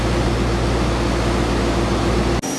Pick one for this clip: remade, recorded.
recorded